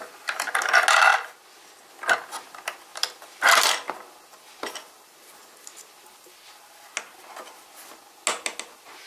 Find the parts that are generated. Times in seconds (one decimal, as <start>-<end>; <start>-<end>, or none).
none